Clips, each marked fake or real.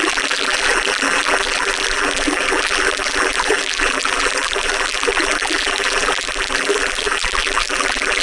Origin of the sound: fake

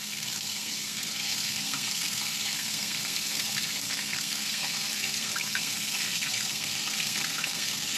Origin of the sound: fake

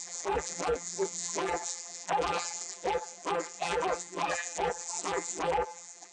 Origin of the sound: fake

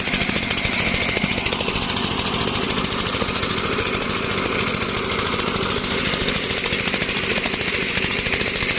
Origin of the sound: real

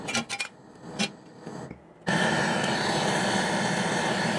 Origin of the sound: real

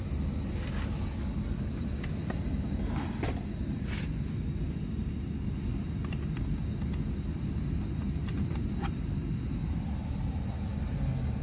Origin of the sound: real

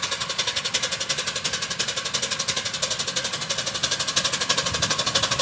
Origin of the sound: real